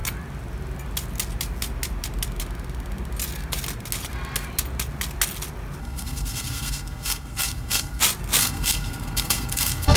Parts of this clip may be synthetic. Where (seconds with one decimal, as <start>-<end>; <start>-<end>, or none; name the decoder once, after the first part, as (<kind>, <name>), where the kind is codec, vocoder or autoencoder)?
5.8-8.0 (codec, SNAC); 8.4-10.0